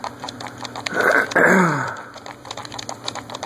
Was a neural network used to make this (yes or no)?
yes